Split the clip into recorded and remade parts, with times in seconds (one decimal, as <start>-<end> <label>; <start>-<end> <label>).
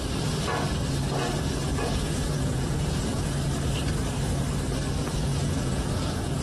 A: 0.0-1.7 recorded; 1.7-3.3 remade; 3.3-5.3 recorded; 5.3-6.4 remade